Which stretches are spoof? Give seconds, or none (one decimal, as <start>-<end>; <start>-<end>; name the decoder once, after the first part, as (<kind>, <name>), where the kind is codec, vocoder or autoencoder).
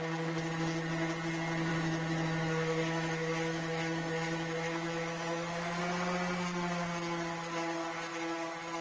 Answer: 1.7-5.8 (autoencoder, DAC-VAE); 8.1-8.8